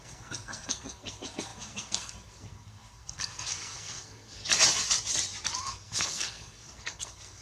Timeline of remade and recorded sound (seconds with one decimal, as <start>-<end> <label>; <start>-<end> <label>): 0.0-4.4 remade; 4.4-5.6 recorded; 5.6-7.4 remade